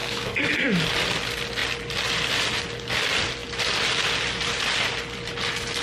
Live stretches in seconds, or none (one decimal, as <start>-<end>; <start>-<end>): 0.5-5.8